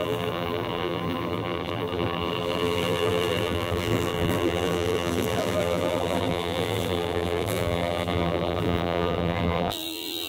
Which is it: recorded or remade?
remade